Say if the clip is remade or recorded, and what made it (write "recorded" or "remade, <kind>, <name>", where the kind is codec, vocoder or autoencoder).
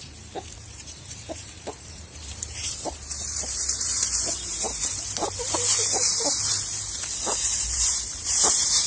remade, vocoder, BigVGAN v2